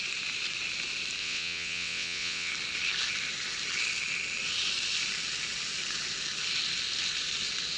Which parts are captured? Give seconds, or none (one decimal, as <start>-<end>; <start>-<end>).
0.0-1.2; 2.5-7.8

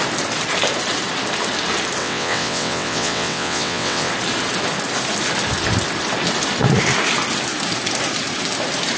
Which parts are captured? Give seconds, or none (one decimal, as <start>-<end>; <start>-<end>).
0.0-2.0; 4.1-9.0

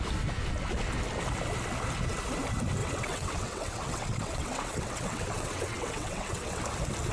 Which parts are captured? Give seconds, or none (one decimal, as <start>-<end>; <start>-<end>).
0.0-2.8; 6.6-7.1

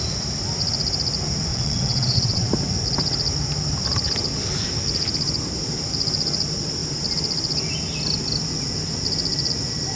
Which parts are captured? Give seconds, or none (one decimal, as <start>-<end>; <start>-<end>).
0.0-1.5; 2.5-10.0

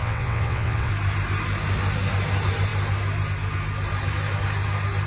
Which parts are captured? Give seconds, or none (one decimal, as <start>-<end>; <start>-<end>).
0.9-5.1

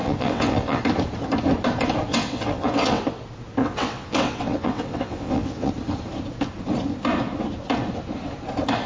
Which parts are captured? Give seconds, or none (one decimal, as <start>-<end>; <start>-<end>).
0.8-2.1; 3.0-3.6; 5.7-8.9

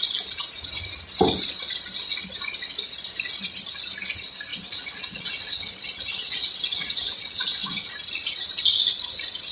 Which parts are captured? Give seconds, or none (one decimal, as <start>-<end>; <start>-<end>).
0.0-4.5; 7.9-9.5

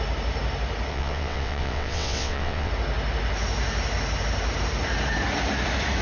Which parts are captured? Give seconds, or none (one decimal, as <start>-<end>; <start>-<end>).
0.0-0.9; 2.7-6.0